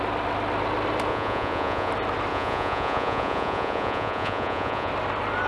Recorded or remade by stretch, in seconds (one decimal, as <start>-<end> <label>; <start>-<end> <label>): 0.0-1.1 recorded; 1.1-1.9 remade; 1.9-2.3 recorded; 2.3-4.9 remade; 4.9-5.5 recorded